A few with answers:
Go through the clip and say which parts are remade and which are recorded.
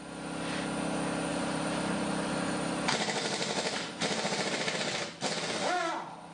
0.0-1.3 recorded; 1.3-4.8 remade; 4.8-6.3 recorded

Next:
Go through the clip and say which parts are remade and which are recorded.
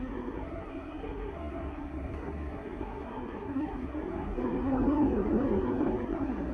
0.0-6.5 remade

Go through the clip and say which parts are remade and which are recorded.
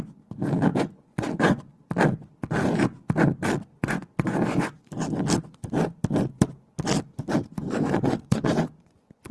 0.0-0.7 recorded; 0.7-1.8 remade; 1.8-3.7 recorded; 3.7-4.8 remade; 4.8-7.6 recorded; 7.6-9.3 remade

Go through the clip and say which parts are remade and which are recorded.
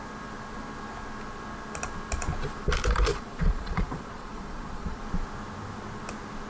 0.0-3.1 recorded; 3.1-5.0 remade; 5.0-6.5 recorded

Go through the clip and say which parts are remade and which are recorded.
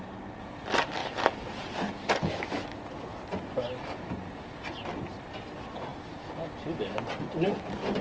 0.0-8.0 recorded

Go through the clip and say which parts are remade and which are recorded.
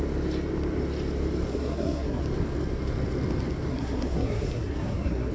0.0-1.5 recorded; 1.5-2.2 remade; 2.2-3.7 recorded; 3.7-5.3 remade